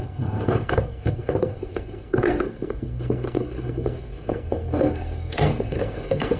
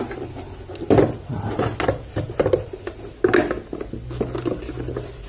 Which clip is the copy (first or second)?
first